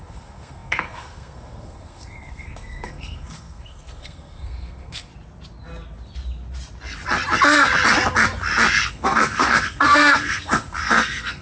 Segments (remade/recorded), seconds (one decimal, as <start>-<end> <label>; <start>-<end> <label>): 0.0-5.1 remade; 5.1-8.9 recorded; 8.9-11.4 remade

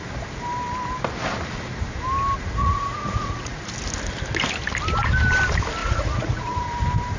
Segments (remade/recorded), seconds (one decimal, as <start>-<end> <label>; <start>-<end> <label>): 0.0-2.6 recorded; 2.6-3.6 remade; 3.6-5.8 recorded; 5.8-6.7 remade; 6.7-7.2 recorded

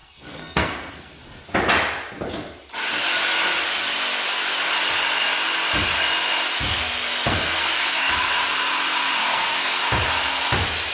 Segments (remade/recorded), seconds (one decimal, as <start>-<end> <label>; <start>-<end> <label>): 0.0-1.2 remade; 1.2-6.7 recorded; 6.7-8.1 remade; 8.1-9.2 recorded; 9.2-9.8 remade; 9.8-10.9 recorded

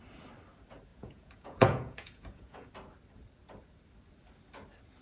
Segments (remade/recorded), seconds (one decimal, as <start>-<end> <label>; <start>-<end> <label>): 0.0-0.9 recorded; 0.9-2.7 remade; 2.7-5.0 recorded

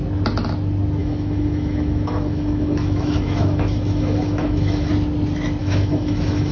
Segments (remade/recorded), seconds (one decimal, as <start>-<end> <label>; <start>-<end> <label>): 0.0-1.0 recorded; 1.0-4.9 remade; 4.9-5.6 recorded; 5.6-6.5 remade

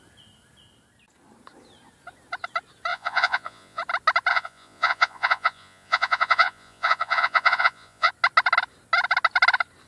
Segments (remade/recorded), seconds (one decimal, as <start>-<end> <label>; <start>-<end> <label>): 0.0-2.9 recorded; 2.9-3.8 remade; 3.8-4.3 recorded; 4.3-8.1 remade; 8.1-9.9 recorded